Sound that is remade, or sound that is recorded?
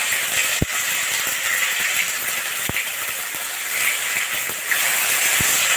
recorded